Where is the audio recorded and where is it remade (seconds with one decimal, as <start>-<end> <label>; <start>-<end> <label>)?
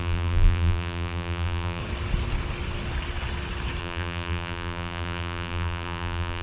0.0-1.8 remade; 1.8-3.8 recorded; 3.8-6.4 remade